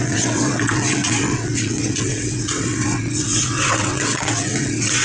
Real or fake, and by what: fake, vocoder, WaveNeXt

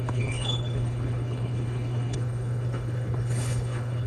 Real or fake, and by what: fake, codec, HILCodec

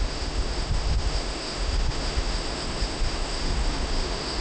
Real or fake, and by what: fake, autoencoder, DAC-VAE